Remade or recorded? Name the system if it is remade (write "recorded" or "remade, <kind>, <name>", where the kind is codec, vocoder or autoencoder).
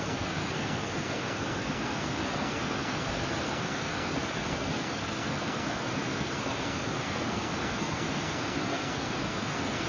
remade, codec, SNAC